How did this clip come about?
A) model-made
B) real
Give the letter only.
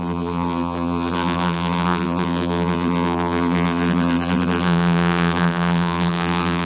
A